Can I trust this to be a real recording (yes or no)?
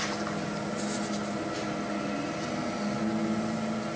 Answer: yes